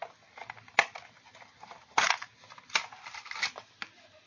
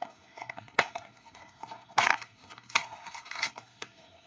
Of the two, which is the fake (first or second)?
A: second